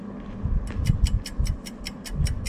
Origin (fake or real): real